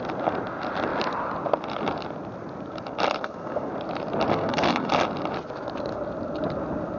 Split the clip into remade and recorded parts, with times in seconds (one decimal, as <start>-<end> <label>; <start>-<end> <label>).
0.0-3.2 recorded; 3.2-3.7 remade; 3.7-4.3 recorded; 4.3-4.9 remade; 4.9-7.0 recorded